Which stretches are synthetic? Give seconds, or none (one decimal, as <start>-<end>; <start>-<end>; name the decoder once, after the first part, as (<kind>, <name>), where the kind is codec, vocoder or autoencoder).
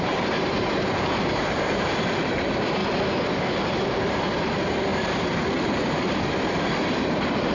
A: 0.0-2.8 (vocoder, BigVGAN v2); 3.6-7.5